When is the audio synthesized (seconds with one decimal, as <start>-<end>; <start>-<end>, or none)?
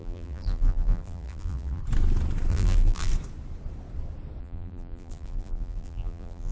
0.0-1.8; 2.5-3.1; 4.4-6.5